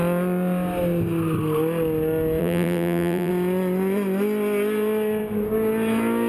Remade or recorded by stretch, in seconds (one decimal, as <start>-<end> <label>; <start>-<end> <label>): 0.0-2.4 recorded; 2.4-3.3 remade; 3.3-6.3 recorded